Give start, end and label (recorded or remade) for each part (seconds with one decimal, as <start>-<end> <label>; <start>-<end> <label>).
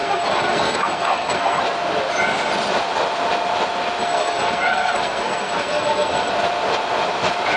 0.0-1.6 remade; 1.6-4.0 recorded; 4.0-6.3 remade; 6.3-7.6 recorded